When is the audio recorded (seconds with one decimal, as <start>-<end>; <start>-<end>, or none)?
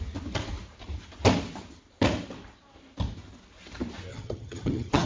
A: 0.0-4.1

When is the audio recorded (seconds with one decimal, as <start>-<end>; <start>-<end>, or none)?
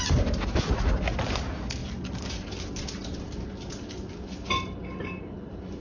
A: 0.0-5.8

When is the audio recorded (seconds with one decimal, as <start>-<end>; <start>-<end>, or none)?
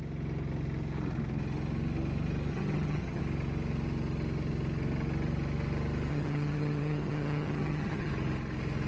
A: 0.0-2.5; 3.2-6.1; 8.1-8.9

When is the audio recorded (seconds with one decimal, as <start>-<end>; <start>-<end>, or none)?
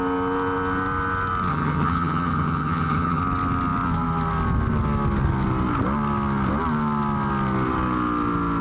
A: 0.0-1.5; 3.2-8.6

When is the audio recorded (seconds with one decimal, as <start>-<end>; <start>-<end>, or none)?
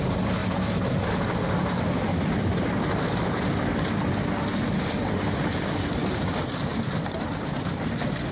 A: 0.0-8.3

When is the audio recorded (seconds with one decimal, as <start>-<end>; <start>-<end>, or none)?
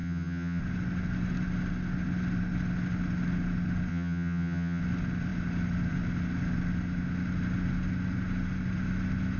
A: 0.6-3.9; 4.8-9.4